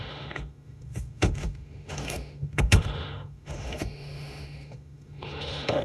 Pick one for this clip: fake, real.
fake